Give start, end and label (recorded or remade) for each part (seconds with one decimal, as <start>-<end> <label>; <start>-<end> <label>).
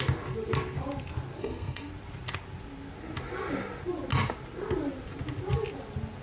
0.0-1.4 recorded; 1.4-1.9 remade; 1.9-6.2 recorded